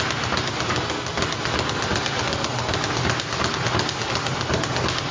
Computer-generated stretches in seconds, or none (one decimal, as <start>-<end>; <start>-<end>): none